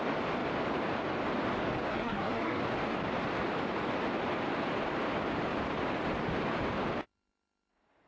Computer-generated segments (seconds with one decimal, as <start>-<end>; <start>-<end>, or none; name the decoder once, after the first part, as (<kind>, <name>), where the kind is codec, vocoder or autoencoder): 1.9-2.6 (codec, SNAC)